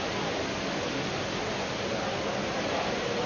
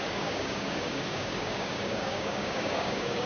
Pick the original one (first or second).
first